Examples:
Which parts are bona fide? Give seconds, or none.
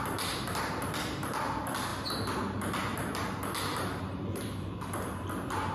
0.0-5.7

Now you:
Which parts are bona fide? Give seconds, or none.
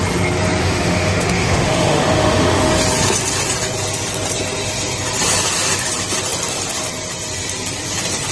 0.0-0.6; 2.7-8.3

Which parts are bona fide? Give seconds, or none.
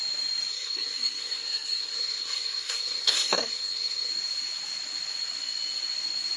0.0-0.5; 4.1-6.4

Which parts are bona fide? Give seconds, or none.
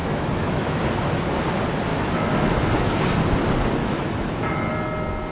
0.8-1.9; 2.9-3.8; 4.7-5.3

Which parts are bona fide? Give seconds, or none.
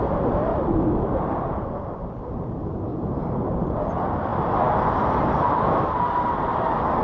0.0-7.0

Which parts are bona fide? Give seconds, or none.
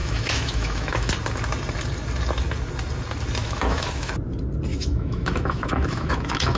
1.1-3.4; 4.1-4.7